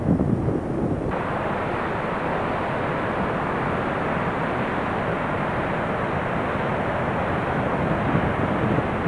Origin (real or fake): real